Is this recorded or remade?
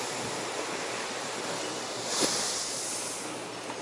recorded